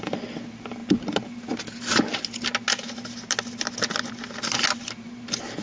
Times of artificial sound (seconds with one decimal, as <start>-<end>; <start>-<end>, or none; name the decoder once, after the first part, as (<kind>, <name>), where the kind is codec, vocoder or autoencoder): none